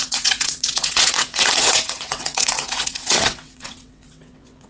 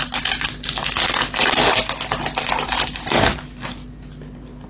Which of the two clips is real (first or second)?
second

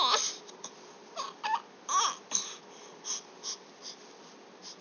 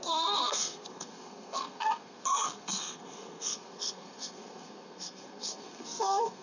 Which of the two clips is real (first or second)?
first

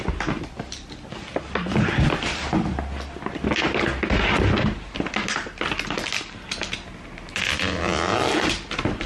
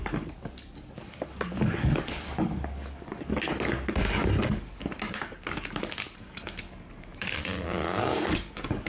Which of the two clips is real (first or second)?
first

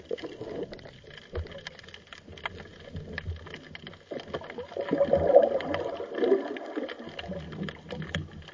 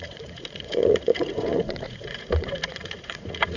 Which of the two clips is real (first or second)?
first